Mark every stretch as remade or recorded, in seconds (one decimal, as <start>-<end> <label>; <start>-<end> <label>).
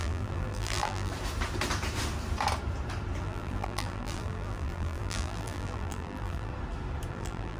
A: 0.0-1.1 remade; 1.1-3.2 recorded; 3.2-6.5 remade; 6.5-7.1 recorded; 7.1-7.6 remade